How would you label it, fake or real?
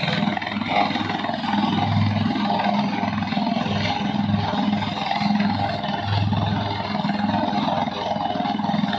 real